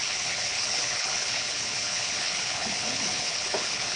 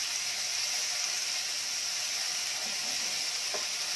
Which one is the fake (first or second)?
first